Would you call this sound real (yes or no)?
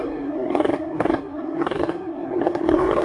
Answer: no